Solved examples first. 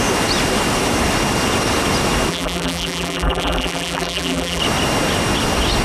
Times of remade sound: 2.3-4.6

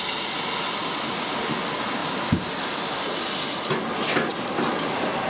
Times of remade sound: 0.8-1.4; 2.0-3.7; 4.3-5.3

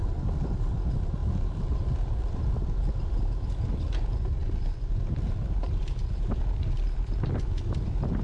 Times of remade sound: 0.0-0.7; 1.2-3.2

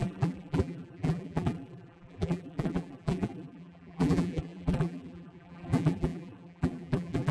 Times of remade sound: 0.0-7.3